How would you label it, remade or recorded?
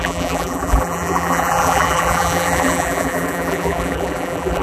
remade